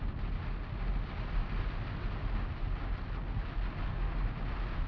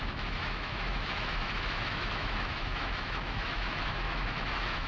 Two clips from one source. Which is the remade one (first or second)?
second